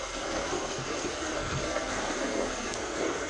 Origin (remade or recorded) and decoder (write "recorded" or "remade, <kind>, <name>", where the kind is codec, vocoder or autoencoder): remade, codec, SNAC